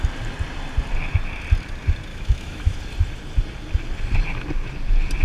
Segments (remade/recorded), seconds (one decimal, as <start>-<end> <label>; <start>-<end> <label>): 0.0-2.1 recorded; 2.1-2.8 remade; 2.8-5.2 recorded